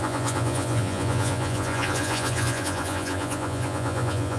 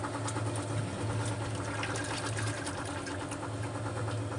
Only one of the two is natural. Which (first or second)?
second